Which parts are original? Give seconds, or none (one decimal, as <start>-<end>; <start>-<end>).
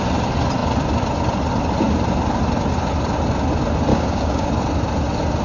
0.0-3.9; 4.5-5.4